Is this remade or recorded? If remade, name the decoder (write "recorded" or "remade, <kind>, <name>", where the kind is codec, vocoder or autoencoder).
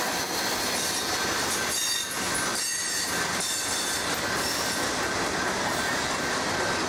recorded